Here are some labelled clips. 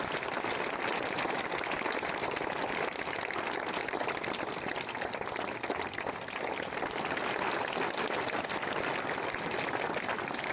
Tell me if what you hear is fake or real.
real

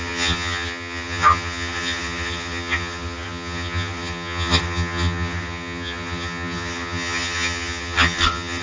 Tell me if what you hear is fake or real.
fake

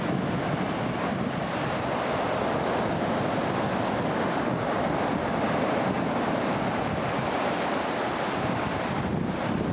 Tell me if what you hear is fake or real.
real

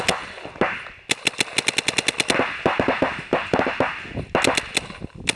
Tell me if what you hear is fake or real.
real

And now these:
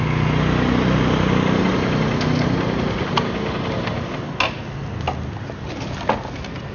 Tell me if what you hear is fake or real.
real